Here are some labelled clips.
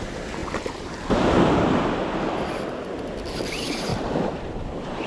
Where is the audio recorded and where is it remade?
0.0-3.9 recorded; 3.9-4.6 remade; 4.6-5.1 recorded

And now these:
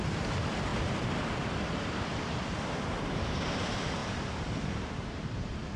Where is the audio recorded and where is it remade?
0.0-4.0 recorded; 4.0-5.2 remade; 5.2-5.8 recorded

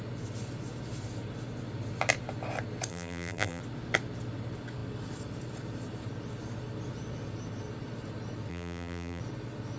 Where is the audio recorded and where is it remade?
0.0-2.9 recorded; 2.9-3.6 remade; 3.6-8.5 recorded; 8.5-9.2 remade; 9.2-9.8 recorded

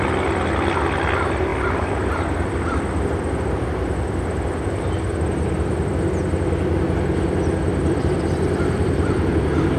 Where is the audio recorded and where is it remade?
0.0-1.5 recorded; 1.5-6.0 remade; 6.0-7.7 recorded; 7.7-9.8 remade

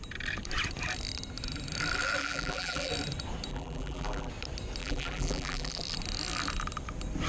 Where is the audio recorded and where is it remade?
0.0-2.2 recorded; 2.2-2.9 remade; 2.9-3.5 recorded; 3.5-4.3 remade; 4.3-4.8 recorded; 4.8-5.8 remade; 5.8-7.3 recorded